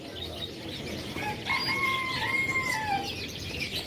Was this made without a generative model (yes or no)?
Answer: yes